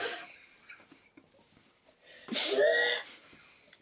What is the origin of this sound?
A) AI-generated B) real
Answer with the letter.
B